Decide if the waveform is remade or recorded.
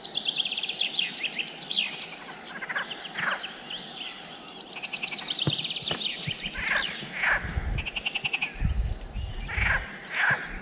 recorded